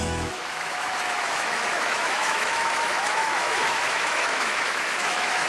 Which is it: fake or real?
fake